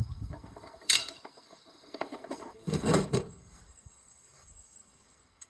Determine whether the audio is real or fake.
fake